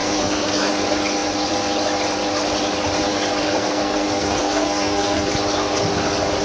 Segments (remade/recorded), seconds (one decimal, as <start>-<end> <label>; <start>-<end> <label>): 0.0-0.7 remade; 0.7-3.4 recorded; 3.4-5.3 remade; 5.3-6.4 recorded